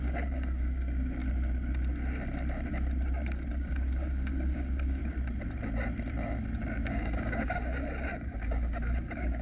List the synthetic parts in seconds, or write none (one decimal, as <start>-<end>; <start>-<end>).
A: 0.0-1.2; 3.5-5.0; 6.9-9.4